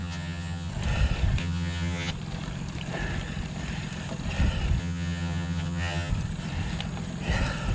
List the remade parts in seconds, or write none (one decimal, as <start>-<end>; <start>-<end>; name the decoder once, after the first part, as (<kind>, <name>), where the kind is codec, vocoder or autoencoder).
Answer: 0.0-0.7 (vocoder, HiFi-GAN); 1.4-2.1; 4.8-6.1